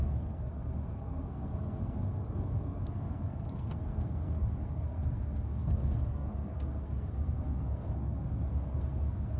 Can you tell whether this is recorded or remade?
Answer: remade